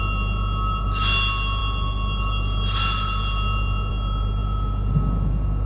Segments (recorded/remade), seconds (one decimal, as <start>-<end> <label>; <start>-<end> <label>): 0.0-5.7 recorded